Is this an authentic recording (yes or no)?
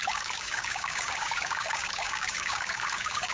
no